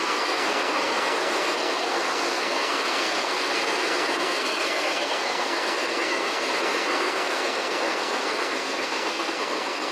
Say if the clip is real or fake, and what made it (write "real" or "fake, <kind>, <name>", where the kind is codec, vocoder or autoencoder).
fake, codec, SNAC